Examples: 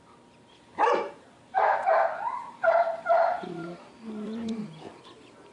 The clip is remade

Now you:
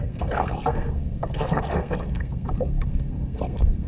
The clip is remade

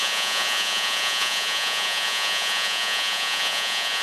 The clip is remade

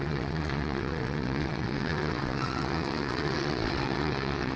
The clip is remade